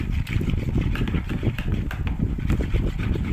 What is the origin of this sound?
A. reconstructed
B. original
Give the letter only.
B